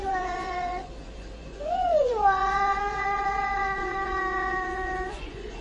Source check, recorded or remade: remade